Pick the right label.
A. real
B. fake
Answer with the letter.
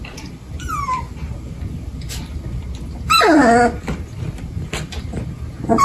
A